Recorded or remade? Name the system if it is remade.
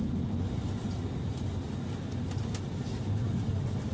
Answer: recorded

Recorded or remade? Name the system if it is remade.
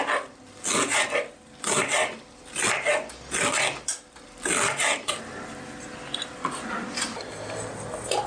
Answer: recorded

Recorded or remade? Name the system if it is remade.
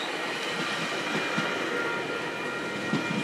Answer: recorded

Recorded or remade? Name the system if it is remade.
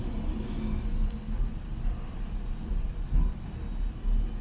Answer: recorded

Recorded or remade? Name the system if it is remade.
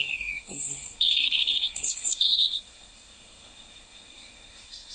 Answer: remade, codec, SNAC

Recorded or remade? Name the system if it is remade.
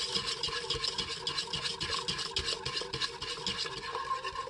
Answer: recorded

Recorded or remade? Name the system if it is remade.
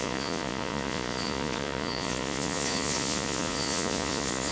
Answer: remade, vocoder, Vocos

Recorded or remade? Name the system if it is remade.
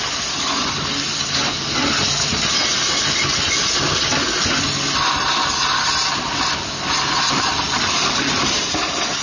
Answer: recorded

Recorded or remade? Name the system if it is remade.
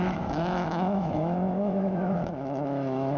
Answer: remade, autoencoder, DAC-VAE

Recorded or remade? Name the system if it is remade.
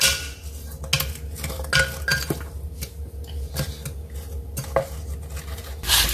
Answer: recorded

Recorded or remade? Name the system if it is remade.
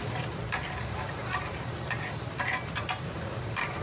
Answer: remade, vocoder, BigVGAN v2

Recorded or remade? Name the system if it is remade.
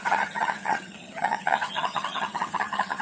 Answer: remade, vocoder, HiFi-GAN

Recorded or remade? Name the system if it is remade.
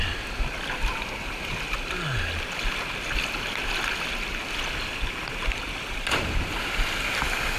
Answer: recorded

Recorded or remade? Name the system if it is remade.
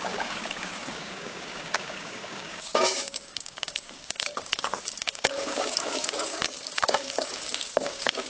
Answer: remade, codec, DAC